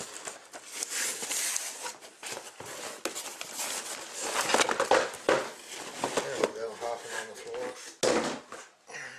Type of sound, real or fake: real